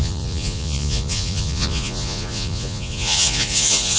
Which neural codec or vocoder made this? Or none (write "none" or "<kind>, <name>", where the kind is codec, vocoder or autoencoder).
vocoder, Vocos